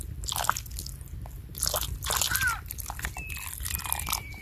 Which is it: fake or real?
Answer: real